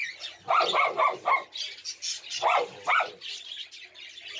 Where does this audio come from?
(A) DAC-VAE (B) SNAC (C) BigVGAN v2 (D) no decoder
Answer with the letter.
D